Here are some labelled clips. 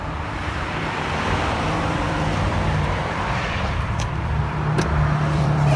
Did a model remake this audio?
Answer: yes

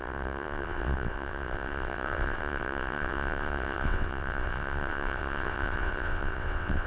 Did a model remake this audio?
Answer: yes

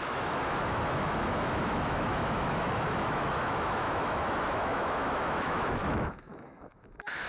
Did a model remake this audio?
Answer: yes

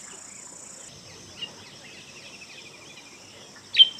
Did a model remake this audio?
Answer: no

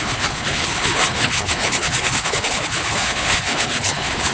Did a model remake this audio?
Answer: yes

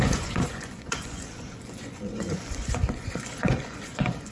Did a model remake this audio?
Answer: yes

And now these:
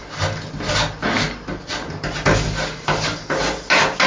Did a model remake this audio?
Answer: no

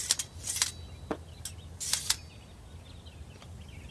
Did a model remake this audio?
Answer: no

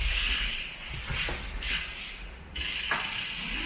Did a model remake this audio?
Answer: no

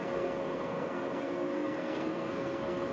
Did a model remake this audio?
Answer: yes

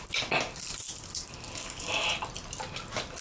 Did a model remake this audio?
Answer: no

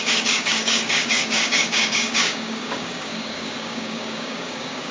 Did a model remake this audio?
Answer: yes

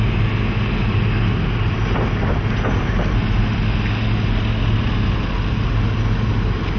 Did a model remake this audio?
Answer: no